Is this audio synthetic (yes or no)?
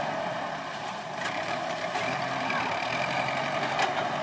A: yes